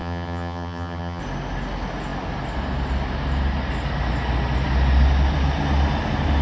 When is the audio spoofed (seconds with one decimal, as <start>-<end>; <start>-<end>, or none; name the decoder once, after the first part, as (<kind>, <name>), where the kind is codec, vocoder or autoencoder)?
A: 0.0-1.2 (vocoder, HiFi-GAN)